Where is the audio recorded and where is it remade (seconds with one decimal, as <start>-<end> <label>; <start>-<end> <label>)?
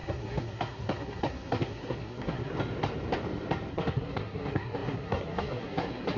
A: 0.0-2.5 remade; 2.5-3.7 recorded; 3.7-6.2 remade